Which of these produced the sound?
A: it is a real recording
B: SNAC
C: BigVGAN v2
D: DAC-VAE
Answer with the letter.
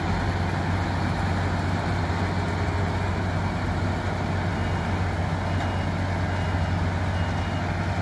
A